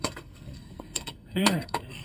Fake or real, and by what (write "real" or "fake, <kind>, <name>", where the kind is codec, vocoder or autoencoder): fake, codec, SNAC